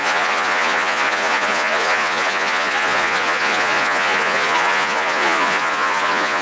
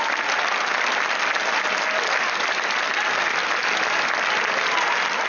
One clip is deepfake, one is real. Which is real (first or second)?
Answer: second